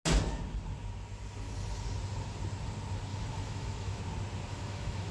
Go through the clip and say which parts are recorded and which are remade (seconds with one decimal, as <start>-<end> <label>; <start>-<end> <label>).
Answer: 0.0-3.1 recorded; 3.1-4.0 remade; 4.0-4.5 recorded; 4.5-5.1 remade